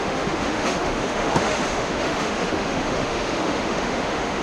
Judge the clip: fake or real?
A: fake